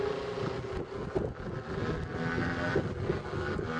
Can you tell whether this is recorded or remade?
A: recorded